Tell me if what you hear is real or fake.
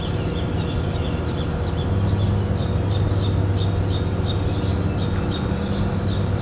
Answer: real